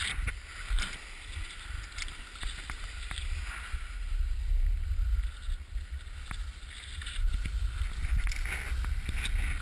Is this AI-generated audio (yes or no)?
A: no